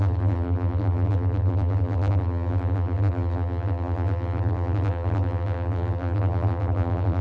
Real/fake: fake